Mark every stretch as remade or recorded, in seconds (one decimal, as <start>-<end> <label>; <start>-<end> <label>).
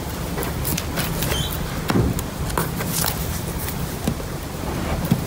0.0-0.7 remade; 0.7-3.2 recorded; 3.2-5.3 remade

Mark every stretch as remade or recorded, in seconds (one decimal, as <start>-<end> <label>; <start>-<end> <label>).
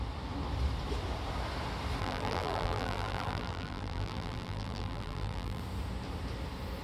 0.0-2.0 recorded; 2.0-5.6 remade; 5.6-6.8 recorded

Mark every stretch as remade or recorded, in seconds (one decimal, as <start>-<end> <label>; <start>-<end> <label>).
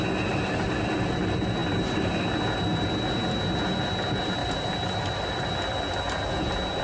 0.0-1.6 recorded; 1.6-2.2 remade; 2.2-4.4 recorded; 4.4-6.0 remade; 6.0-6.8 recorded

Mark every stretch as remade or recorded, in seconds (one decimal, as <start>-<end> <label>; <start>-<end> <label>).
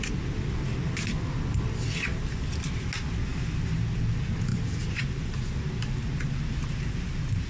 0.0-2.1 recorded; 2.1-2.9 remade; 2.9-3.3 recorded; 3.3-3.8 remade; 3.8-4.5 recorded; 4.5-5.7 remade; 5.7-7.5 recorded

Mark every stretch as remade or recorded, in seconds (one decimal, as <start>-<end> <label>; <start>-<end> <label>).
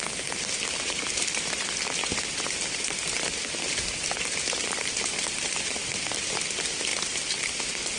0.0-2.0 recorded; 2.0-2.5 remade; 2.5-5.1 recorded; 5.1-5.9 remade; 5.9-6.9 recorded; 6.9-7.6 remade; 7.6-8.0 recorded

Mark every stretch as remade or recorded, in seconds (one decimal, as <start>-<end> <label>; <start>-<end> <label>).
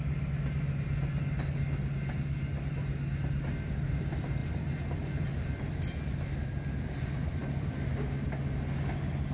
0.0-9.3 recorded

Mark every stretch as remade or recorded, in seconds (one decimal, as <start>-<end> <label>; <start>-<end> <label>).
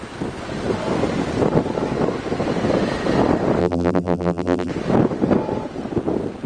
0.0-3.6 recorded; 3.6-4.7 remade; 4.7-6.5 recorded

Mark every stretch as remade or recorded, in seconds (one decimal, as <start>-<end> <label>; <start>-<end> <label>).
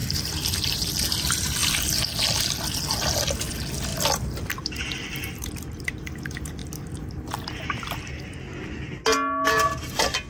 0.0-0.9 remade; 0.9-3.9 recorded; 3.9-6.0 remade; 6.0-6.6 recorded; 6.6-7.3 remade; 7.3-10.3 recorded